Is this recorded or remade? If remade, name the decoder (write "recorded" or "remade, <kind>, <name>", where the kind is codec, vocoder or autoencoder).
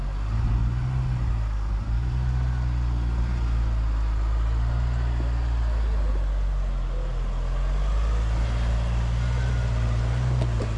recorded